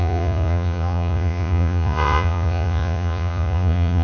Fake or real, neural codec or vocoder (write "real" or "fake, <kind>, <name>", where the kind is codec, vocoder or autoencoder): fake, vocoder, Vocos